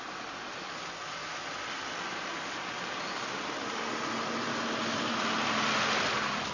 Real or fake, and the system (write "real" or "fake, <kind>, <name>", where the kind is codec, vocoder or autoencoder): real